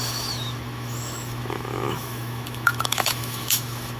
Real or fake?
fake